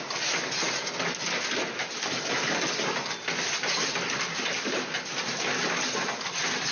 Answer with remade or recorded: recorded